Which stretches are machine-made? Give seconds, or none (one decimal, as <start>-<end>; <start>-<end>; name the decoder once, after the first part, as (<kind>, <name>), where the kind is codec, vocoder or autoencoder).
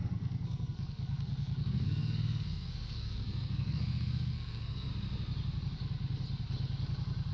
0.0-4.9 (codec, SNAC)